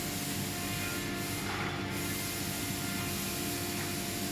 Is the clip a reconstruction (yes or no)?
no